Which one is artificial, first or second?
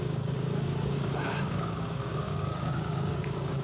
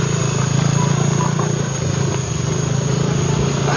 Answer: first